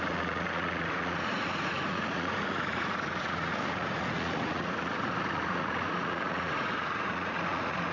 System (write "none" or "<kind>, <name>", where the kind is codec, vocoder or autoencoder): vocoder, Vocos